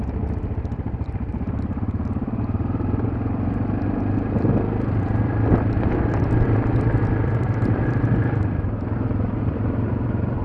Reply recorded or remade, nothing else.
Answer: remade